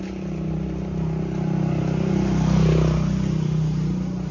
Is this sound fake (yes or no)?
no